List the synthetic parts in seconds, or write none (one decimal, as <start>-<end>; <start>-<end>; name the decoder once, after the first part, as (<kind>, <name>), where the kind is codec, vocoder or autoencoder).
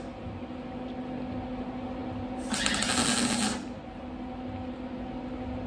none